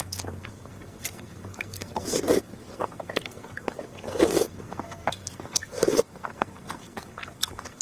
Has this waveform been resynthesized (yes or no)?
yes